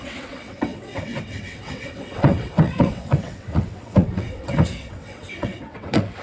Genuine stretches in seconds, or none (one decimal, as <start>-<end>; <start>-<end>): none